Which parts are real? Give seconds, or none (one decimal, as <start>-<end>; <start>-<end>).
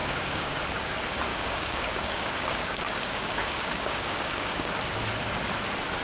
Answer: 0.6-1.3; 4.7-6.0